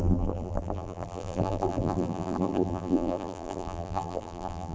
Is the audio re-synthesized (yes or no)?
yes